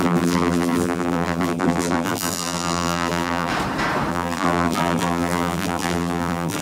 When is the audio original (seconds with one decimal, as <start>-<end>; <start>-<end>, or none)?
3.5-4.1